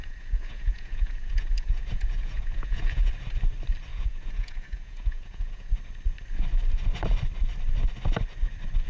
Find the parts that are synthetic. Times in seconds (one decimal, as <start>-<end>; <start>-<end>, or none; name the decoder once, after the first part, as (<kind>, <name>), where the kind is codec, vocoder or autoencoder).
0.0-3.1 (vocoder, Vocos); 3.9-5.7